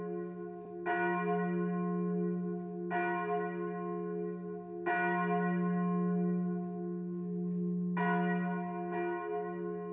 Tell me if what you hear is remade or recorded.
recorded